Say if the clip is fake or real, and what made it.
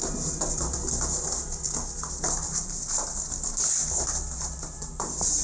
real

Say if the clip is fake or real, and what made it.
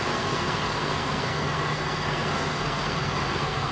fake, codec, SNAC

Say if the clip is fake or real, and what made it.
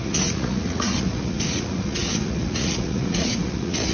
fake, vocoder, Vocos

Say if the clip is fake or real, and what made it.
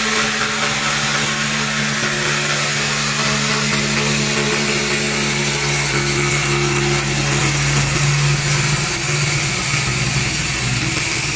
real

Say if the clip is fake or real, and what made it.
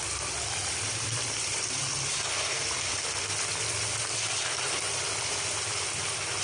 fake, vocoder, BigVGAN v2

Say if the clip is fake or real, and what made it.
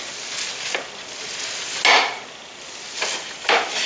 real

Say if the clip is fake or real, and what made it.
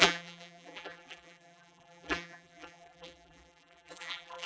fake, vocoder, BigVGAN v2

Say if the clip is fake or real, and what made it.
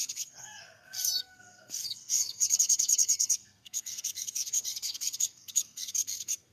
fake, codec, SNAC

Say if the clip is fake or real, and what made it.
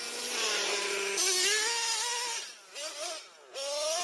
real